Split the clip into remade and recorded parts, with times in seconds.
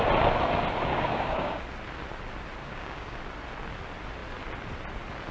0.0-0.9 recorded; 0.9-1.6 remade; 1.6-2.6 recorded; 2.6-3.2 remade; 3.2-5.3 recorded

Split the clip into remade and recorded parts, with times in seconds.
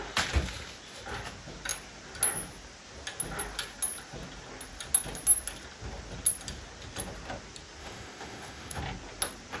0.0-7.8 recorded; 7.8-8.8 remade; 8.8-9.6 recorded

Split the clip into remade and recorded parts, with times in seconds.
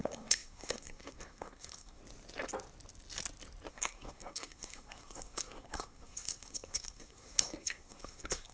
0.0-2.0 remade; 2.0-3.7 recorded; 3.7-8.5 remade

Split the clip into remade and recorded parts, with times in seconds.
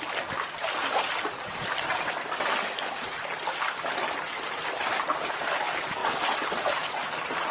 0.0-7.5 recorded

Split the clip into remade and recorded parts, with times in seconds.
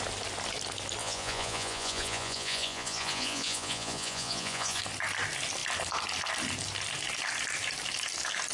0.0-1.0 recorded; 1.0-4.8 remade; 4.8-8.5 recorded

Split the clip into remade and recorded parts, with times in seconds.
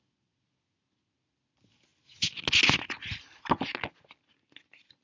0.0-5.0 recorded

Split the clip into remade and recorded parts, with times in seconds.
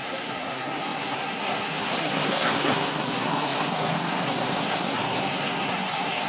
0.0-6.3 remade